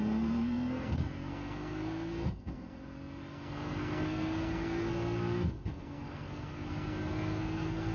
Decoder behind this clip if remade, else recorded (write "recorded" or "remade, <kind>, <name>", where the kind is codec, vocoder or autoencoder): remade, codec, SNAC